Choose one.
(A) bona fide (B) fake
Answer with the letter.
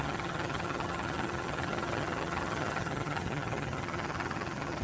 B